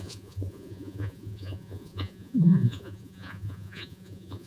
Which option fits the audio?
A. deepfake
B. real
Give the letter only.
A